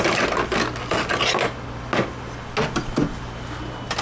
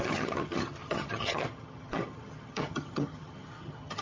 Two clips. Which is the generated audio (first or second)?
second